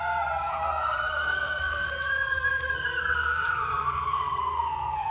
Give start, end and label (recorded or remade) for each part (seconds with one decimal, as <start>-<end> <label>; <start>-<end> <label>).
0.0-5.1 remade